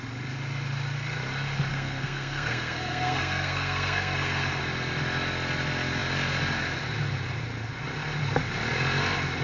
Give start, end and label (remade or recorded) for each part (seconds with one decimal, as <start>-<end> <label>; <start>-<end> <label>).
0.0-1.7 recorded; 1.7-4.6 remade; 4.6-9.4 recorded